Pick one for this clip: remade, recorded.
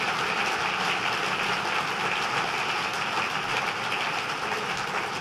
recorded